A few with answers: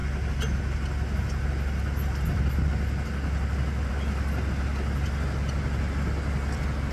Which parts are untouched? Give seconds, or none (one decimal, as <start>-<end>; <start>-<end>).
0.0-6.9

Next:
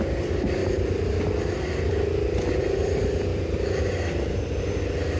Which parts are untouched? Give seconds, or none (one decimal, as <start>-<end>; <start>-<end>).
0.0-5.2

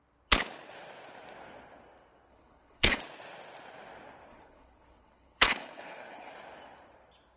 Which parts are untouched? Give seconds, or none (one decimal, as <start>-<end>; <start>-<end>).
0.0-2.3; 3.0-4.3; 6.3-7.4

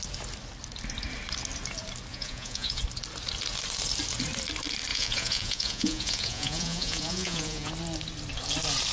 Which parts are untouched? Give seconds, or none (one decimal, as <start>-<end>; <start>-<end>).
0.0-2.1; 2.8-4.9; 7.7-8.9

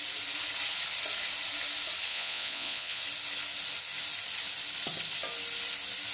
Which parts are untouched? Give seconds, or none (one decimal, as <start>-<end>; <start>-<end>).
0.0-2.1; 3.0-6.1

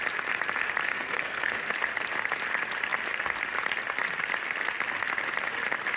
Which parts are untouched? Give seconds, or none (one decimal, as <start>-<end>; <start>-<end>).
0.0-0.9; 1.7-6.0